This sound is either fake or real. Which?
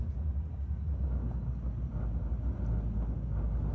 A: real